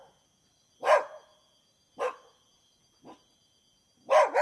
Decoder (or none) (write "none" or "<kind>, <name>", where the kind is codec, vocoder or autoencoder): none